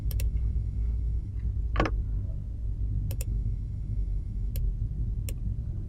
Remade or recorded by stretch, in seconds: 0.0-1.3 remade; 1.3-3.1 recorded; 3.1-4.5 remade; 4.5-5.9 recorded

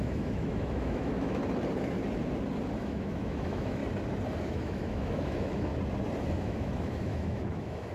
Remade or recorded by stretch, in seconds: 0.0-1.4 remade; 1.4-2.8 recorded; 2.8-3.8 remade; 3.8-4.5 recorded; 4.5-5.7 remade; 5.7-6.3 recorded; 6.3-7.9 remade

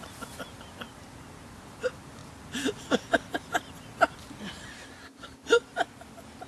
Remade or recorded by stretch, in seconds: 0.0-6.5 recorded

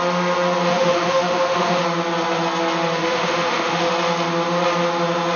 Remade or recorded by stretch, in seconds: 0.0-0.7 recorded; 0.7-1.8 remade; 1.8-3.0 recorded; 3.0-3.9 remade; 3.9-5.4 recorded